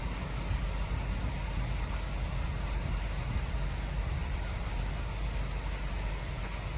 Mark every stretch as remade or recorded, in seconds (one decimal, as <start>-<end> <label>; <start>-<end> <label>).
0.0-6.8 recorded